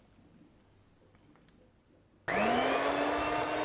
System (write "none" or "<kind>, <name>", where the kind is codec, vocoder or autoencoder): none